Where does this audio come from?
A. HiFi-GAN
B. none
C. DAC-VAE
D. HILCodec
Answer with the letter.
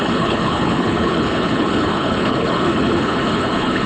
D